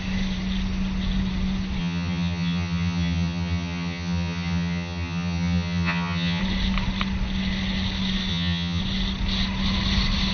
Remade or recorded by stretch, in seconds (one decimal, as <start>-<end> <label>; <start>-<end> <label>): 0.0-1.8 recorded; 1.8-6.4 remade; 6.4-8.3 recorded; 8.3-8.8 remade; 8.8-10.3 recorded